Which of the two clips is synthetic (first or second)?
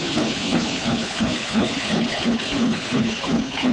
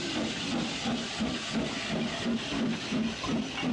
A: first